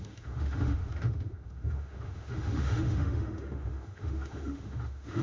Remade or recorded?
remade